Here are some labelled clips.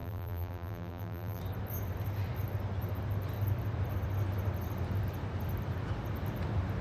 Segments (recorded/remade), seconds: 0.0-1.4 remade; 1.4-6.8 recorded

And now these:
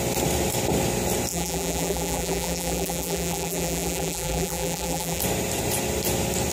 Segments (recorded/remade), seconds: 0.0-1.3 recorded; 1.3-5.2 remade; 5.2-6.5 recorded